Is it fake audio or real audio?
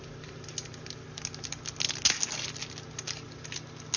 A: real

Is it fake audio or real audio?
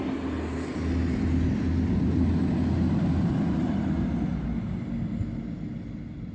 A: real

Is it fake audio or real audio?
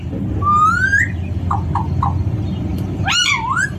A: real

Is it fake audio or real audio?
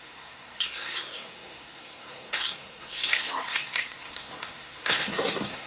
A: fake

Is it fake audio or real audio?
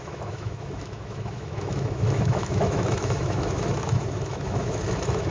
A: fake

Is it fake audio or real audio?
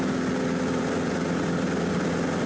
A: real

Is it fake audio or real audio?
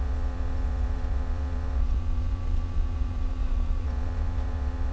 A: fake